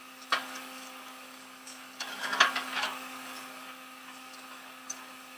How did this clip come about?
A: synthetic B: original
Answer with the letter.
A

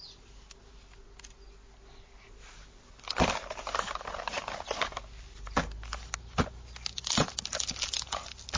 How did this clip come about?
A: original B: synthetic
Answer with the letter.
A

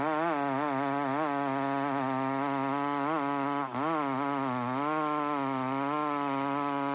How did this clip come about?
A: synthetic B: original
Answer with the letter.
B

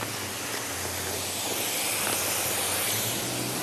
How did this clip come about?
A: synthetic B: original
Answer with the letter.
B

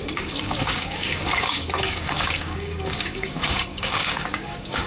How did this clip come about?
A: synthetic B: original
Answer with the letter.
A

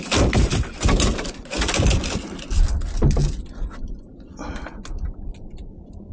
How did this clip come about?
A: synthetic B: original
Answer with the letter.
B